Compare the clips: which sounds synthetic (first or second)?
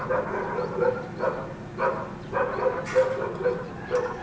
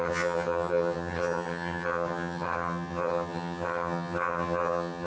second